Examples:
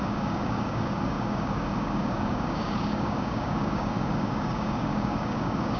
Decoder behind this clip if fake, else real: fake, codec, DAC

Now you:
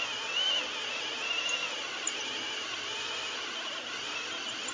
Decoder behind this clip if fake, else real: real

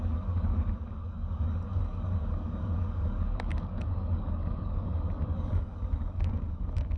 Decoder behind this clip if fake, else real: fake, codec, DAC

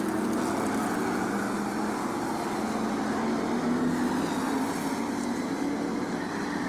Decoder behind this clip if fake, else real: real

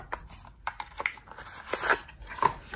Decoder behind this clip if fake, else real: real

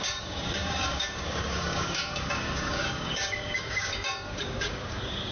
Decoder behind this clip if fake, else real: fake, codec, DAC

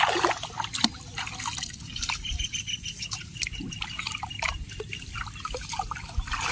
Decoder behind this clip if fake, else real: real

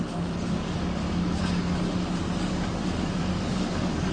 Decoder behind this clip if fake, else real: fake, codec, DAC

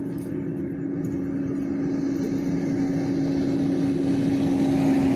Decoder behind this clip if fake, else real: real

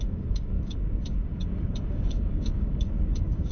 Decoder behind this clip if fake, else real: fake, codec, DAC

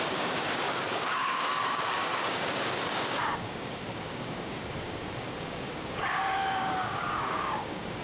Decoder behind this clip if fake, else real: fake, codec, DAC